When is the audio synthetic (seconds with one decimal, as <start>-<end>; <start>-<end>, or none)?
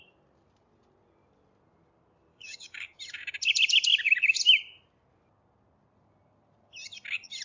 2.3-3.0